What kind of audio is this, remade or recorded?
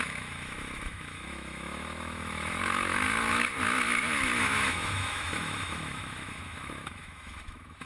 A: remade